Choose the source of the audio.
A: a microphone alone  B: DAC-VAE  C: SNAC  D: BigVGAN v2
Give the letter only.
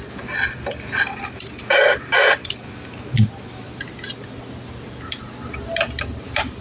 A